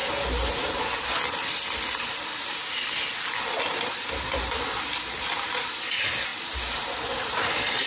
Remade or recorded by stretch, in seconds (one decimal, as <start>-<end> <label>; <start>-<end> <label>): 0.0-7.9 recorded